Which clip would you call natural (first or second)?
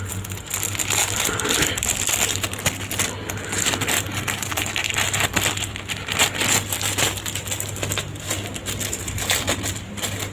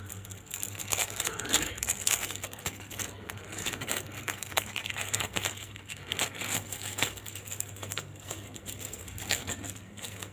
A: first